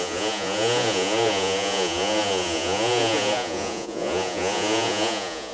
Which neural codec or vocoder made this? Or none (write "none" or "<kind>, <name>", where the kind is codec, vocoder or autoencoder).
vocoder, Vocos